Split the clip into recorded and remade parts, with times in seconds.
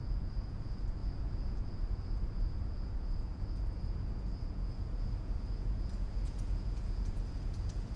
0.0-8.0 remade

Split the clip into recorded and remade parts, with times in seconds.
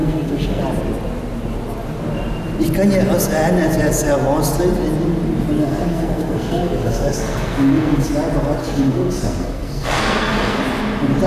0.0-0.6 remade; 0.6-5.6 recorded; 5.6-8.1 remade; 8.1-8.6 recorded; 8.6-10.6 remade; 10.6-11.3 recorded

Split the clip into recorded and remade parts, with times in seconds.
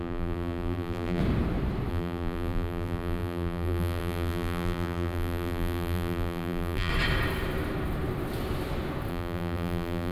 0.0-1.2 remade; 1.2-1.9 recorded; 1.9-6.9 remade; 6.9-9.1 recorded; 9.1-10.1 remade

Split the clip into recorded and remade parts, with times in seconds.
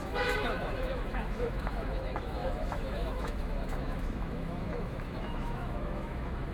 0.0-6.5 remade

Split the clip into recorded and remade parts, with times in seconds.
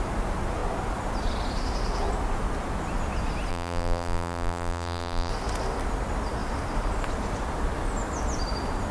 0.0-3.5 recorded; 3.5-5.3 remade; 5.3-8.9 recorded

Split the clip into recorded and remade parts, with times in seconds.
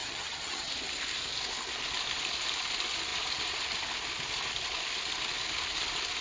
0.0-0.7 remade; 0.7-6.2 recorded